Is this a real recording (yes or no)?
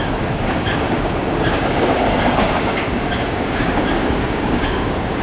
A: no